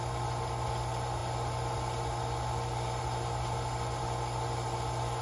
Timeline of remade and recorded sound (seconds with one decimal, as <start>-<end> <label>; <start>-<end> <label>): 0.0-5.2 recorded

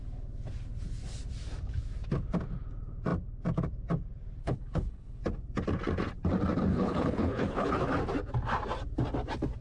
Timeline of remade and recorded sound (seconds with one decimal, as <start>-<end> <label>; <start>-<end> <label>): 0.0-4.4 recorded; 4.4-5.2 remade; 5.2-6.7 recorded; 6.7-7.7 remade; 7.7-9.6 recorded

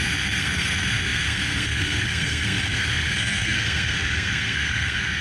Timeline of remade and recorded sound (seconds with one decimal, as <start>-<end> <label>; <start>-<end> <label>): 0.0-5.2 remade

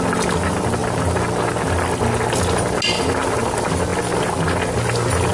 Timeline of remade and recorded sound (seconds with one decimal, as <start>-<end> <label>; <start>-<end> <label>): 0.0-5.3 recorded

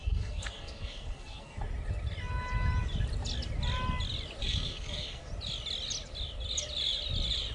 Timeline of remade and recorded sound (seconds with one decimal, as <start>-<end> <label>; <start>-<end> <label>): 0.0-1.6 remade; 1.6-4.4 recorded; 4.4-5.3 remade; 5.3-7.5 recorded